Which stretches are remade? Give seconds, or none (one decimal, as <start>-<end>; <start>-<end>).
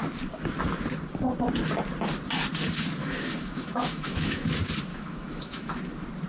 3.0-4.5; 4.9-5.8